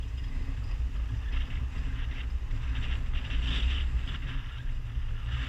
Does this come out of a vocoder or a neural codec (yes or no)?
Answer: no